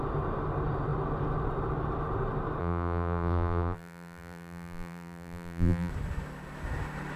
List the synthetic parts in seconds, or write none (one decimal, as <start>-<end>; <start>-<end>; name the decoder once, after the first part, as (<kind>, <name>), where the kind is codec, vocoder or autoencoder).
2.6-5.9 (vocoder, BigVGAN v2)